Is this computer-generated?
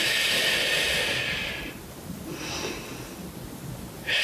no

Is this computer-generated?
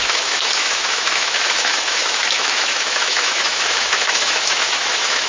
yes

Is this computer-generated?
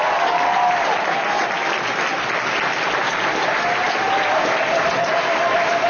no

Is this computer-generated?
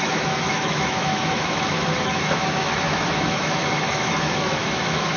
yes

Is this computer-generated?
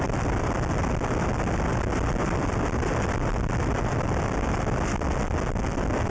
yes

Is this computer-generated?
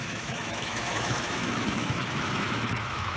yes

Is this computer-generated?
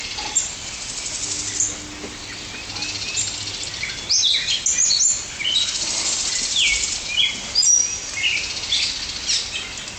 no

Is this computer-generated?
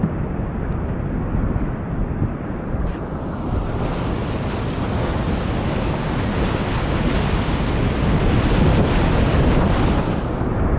no